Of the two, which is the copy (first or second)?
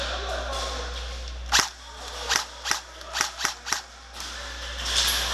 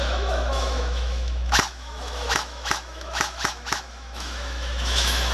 second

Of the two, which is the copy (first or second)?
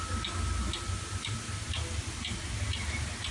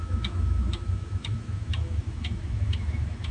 second